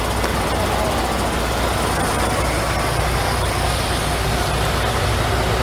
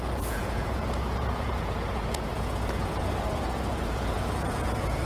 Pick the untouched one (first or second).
first